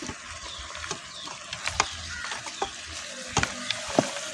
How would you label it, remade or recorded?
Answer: recorded